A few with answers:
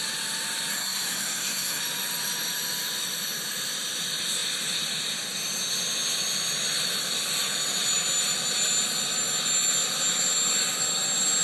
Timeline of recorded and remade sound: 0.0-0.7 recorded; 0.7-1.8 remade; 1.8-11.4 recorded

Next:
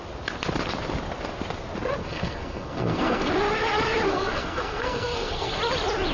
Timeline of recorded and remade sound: 0.0-2.0 recorded; 2.0-3.3 remade; 3.3-4.1 recorded; 4.1-5.6 remade; 5.6-6.1 recorded

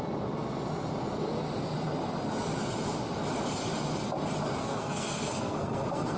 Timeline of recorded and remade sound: 0.0-4.6 recorded; 4.6-6.2 remade